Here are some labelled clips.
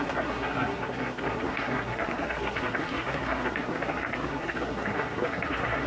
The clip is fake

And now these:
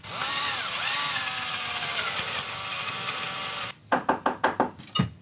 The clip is real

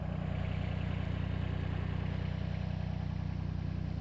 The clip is real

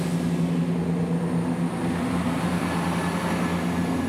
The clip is real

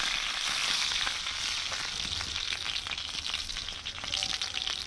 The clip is real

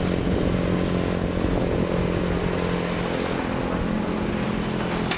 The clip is real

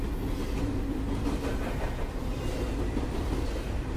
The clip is real